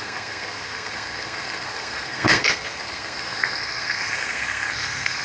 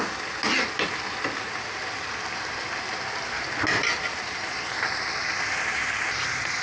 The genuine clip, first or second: second